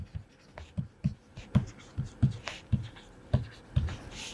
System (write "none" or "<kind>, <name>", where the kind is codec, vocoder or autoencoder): none